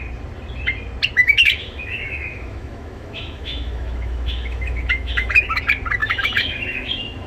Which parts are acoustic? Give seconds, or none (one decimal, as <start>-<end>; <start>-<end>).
0.0-1.2; 5.6-6.0